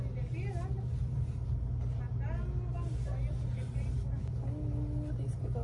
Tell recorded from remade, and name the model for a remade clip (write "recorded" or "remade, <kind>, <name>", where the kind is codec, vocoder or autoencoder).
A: recorded